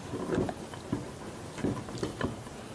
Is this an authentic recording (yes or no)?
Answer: yes